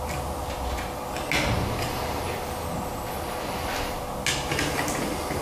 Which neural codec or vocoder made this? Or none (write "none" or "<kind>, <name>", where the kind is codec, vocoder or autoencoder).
none